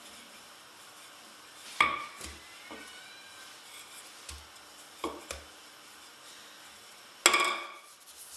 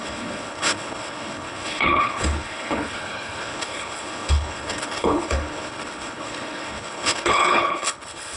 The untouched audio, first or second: first